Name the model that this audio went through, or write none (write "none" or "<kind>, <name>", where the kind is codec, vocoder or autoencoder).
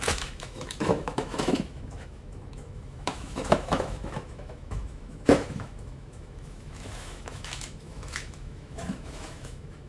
autoencoder, DAC-VAE